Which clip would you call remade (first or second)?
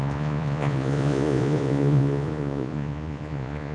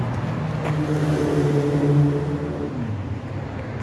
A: first